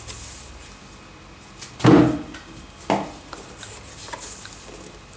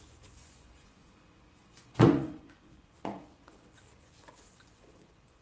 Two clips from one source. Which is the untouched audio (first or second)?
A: first